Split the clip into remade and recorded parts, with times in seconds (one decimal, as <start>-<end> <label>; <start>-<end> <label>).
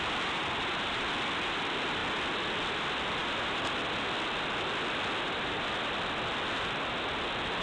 0.0-7.6 recorded